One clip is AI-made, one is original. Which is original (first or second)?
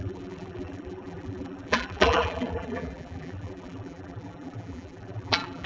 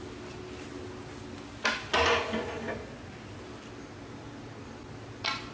second